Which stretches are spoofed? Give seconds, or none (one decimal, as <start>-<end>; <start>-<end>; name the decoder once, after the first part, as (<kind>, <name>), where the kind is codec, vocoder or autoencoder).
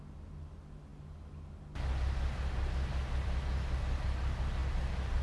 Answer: none